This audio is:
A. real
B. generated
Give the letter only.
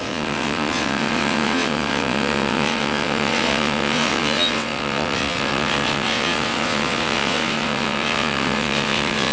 B